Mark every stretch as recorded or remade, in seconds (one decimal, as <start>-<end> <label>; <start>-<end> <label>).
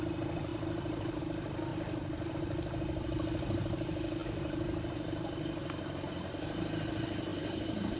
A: 0.0-0.5 recorded; 0.5-1.2 remade; 1.2-1.7 recorded; 1.7-2.3 remade; 2.3-7.3 recorded; 7.3-8.0 remade